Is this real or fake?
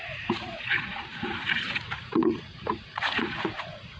fake